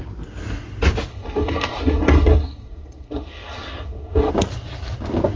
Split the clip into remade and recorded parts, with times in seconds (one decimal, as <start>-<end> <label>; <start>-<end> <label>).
0.0-1.1 recorded; 1.1-4.3 remade; 4.3-5.4 recorded